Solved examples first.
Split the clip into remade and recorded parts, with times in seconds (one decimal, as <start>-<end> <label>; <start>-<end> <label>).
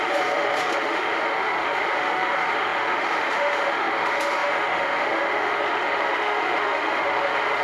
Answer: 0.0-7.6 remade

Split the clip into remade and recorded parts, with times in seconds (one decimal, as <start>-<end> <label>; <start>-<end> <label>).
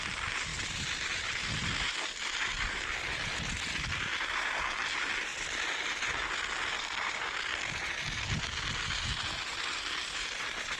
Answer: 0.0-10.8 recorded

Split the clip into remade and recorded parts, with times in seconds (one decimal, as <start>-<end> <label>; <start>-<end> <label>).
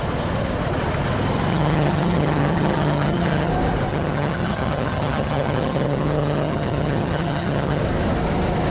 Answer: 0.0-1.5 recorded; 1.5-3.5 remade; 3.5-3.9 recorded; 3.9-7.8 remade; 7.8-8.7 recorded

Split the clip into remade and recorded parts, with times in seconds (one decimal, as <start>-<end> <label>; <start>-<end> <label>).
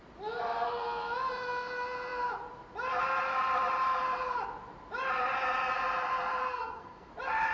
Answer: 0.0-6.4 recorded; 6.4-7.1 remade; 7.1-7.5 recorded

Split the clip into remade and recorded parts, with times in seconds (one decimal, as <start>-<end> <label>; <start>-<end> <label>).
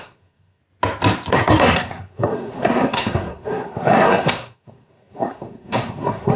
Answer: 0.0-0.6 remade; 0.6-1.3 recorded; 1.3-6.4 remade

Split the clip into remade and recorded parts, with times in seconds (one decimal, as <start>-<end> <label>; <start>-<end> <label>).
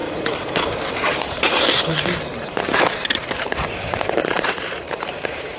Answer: 0.0-5.6 remade